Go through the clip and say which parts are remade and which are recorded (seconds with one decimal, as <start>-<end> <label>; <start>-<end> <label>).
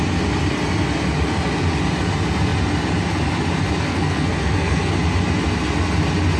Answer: 0.0-3.9 recorded; 3.9-4.9 remade; 4.9-6.4 recorded